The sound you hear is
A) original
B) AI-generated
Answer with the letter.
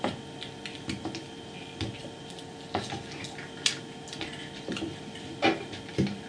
A